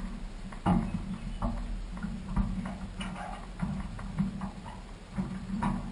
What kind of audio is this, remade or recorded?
recorded